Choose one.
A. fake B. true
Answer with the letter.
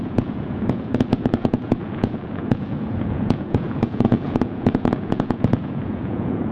A